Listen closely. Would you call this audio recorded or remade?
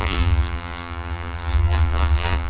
remade